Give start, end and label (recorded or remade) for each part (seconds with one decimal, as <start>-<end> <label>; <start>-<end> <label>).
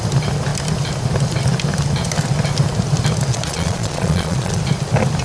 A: 0.0-3.3 recorded; 3.3-4.6 remade; 4.6-5.2 recorded